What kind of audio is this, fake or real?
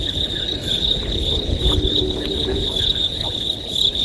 fake